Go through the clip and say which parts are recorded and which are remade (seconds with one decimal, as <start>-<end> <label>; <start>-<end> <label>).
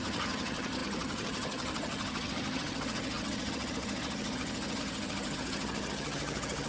0.0-6.7 remade